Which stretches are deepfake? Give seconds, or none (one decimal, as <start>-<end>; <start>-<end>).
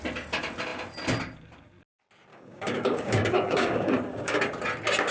2.3-4.4